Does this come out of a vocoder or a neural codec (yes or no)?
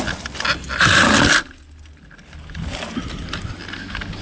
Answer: no